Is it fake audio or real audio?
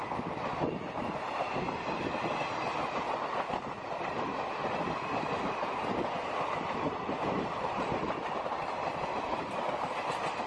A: real